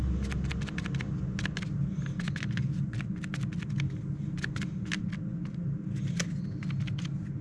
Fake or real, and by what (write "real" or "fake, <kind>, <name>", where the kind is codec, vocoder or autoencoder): real